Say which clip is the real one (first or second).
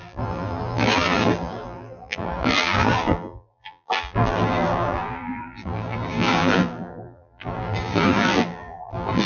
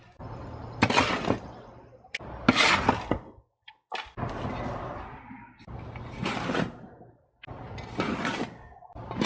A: second